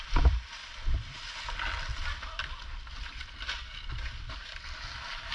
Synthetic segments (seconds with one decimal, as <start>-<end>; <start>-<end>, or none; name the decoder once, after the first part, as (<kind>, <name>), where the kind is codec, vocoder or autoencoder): none